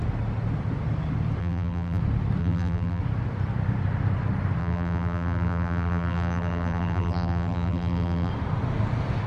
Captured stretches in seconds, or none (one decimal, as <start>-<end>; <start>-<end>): 0.0-1.4; 2.0-2.4; 3.0-4.6; 8.3-9.3